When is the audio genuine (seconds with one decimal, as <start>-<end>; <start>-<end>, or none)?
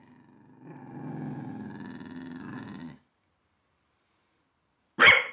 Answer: 0.0-5.3